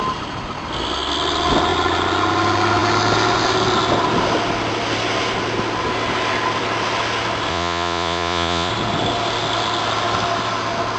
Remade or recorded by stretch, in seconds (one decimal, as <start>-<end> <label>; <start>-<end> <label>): 0.0-7.5 recorded; 7.5-8.7 remade; 8.7-11.0 recorded